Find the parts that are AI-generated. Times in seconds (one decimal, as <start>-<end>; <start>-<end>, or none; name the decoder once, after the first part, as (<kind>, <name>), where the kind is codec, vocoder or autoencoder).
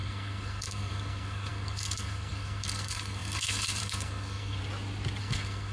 0.0-4.6 (codec, SNAC); 5.2-5.7